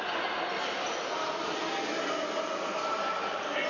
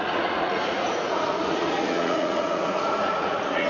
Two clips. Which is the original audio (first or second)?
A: first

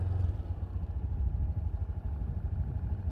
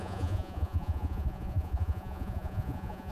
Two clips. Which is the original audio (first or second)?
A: first